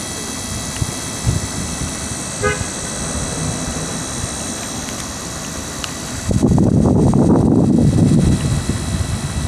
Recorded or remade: recorded